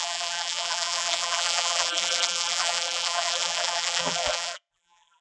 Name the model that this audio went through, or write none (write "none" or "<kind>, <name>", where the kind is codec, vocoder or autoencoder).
vocoder, BigVGAN v2